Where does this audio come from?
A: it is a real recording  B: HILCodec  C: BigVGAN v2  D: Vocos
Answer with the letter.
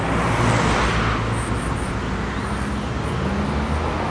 A